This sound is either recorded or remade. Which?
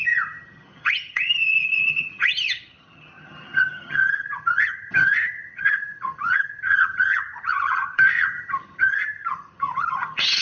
remade